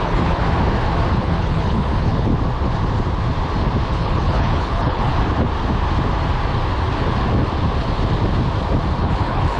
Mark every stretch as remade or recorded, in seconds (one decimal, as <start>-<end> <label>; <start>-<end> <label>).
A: 0.0-0.4 remade; 0.4-1.1 recorded; 1.1-2.3 remade; 2.3-3.9 recorded; 3.9-5.1 remade; 5.1-9.0 recorded; 9.0-9.6 remade